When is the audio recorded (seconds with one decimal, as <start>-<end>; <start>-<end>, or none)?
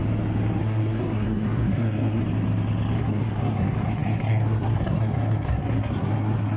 0.0-0.6; 2.2-3.0